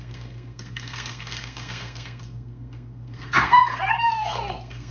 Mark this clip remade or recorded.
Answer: remade